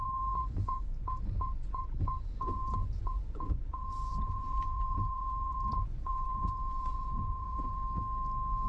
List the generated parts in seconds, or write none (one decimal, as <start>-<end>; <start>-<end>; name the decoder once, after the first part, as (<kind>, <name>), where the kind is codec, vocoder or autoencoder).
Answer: 0.0-7.8 (vocoder, Vocos)